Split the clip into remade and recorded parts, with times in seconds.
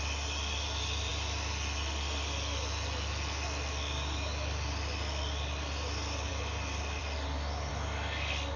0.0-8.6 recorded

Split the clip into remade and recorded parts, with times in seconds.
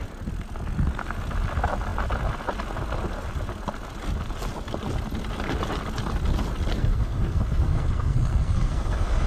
0.0-6.7 recorded; 6.7-9.3 remade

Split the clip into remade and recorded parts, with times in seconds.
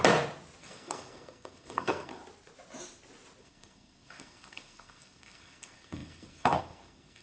0.0-0.6 recorded; 0.6-2.2 remade; 2.2-3.4 recorded; 3.4-7.2 remade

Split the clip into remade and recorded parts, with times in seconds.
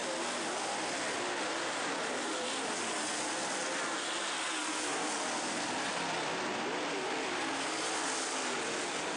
0.0-9.2 recorded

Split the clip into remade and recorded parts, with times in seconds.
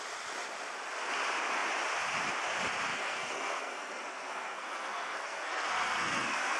0.0-2.9 recorded; 2.9-6.6 remade